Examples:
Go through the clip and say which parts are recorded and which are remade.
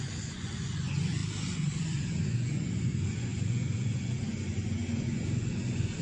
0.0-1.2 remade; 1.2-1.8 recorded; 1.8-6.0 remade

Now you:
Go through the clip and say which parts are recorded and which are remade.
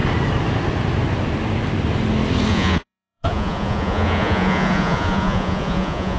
0.0-2.5 recorded; 2.5-6.2 remade